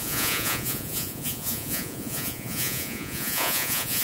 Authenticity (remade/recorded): remade